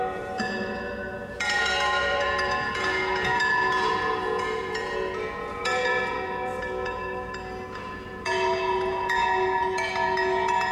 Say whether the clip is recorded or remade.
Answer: remade